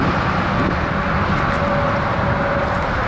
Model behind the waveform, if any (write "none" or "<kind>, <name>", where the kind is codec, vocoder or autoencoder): none